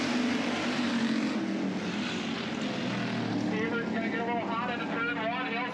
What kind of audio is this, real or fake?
real